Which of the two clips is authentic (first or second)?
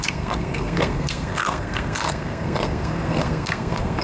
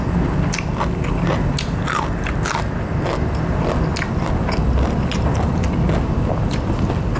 second